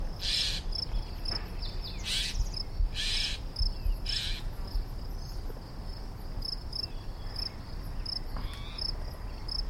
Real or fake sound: real